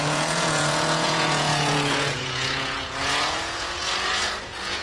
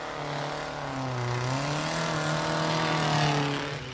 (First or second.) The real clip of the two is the second